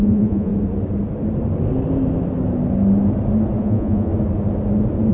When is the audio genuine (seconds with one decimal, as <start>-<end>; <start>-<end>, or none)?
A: 0.5-3.6; 4.1-5.1